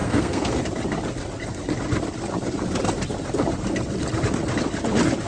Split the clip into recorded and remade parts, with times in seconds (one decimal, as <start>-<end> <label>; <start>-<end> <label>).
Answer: 0.0-0.6 remade; 0.6-5.3 recorded